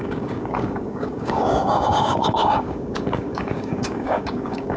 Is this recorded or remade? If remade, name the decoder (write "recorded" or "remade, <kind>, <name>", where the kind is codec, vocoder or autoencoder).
remade, codec, DAC